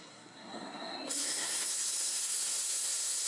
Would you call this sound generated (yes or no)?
yes